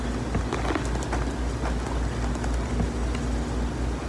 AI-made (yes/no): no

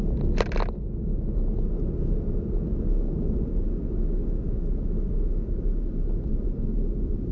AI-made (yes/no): no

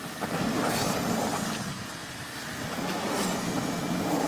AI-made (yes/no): no